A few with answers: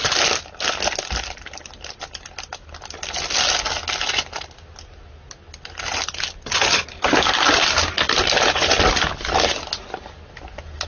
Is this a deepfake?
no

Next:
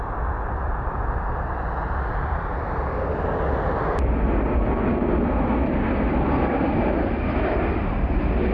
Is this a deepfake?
no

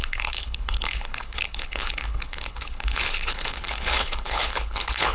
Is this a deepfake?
yes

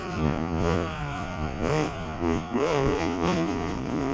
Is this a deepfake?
yes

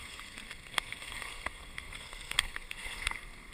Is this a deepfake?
yes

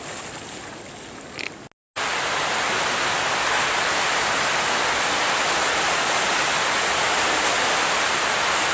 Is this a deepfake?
no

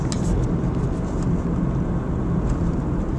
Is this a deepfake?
no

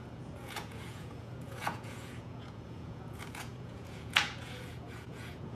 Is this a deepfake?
yes